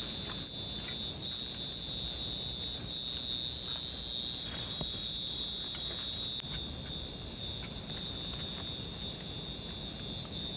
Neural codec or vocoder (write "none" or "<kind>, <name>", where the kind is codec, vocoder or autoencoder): none